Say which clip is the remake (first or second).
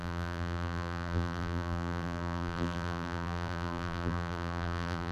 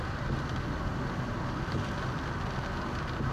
first